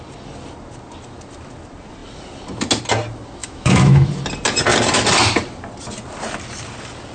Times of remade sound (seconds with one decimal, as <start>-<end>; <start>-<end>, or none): 3.4-4.1